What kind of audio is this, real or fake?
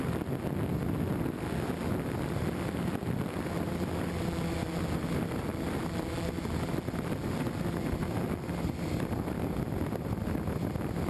real